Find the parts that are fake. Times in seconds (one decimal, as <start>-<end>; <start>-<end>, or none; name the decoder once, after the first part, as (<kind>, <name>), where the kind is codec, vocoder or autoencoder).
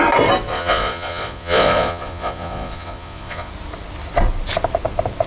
0.5-3.5 (vocoder, Vocos)